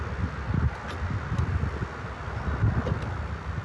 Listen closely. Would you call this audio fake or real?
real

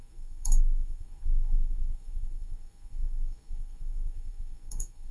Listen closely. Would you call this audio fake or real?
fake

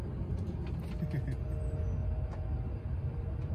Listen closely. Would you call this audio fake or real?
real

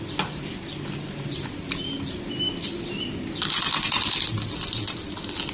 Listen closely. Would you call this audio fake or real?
real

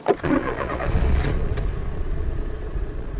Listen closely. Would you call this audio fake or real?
fake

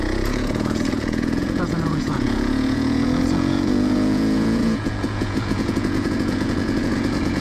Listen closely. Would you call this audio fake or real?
fake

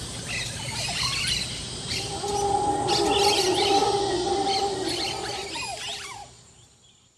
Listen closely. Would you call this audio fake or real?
real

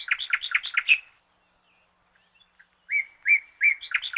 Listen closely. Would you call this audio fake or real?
real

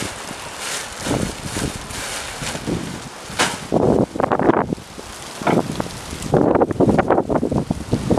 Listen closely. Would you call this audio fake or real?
real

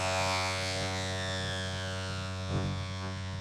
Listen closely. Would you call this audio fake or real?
fake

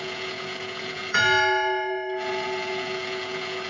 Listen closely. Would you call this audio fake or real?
fake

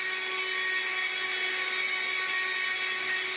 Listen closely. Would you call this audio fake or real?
real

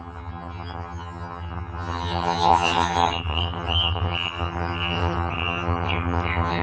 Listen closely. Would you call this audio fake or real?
fake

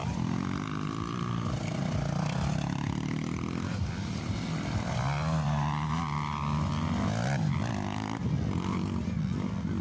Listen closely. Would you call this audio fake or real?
real